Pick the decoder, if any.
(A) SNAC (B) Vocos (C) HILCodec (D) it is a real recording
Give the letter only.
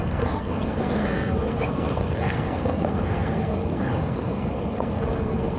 A